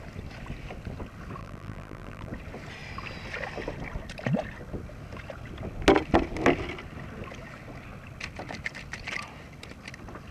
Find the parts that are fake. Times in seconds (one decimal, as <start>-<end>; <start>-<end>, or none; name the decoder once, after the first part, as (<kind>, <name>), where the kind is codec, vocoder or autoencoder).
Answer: 1.4-2.3 (vocoder, BigVGAN v2)